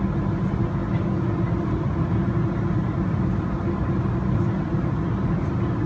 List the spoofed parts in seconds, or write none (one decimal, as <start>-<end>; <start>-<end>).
none